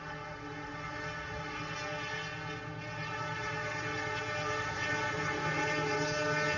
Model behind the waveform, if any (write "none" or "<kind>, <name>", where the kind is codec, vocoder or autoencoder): none